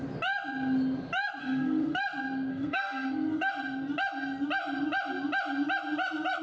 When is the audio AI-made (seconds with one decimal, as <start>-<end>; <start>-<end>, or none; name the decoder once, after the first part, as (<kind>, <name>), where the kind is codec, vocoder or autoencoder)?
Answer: 1.4-2.0 (codec, SNAC); 2.5-3.5

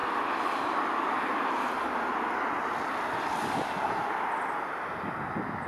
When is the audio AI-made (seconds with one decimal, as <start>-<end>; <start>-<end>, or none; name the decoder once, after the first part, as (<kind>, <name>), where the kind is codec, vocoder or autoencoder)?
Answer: none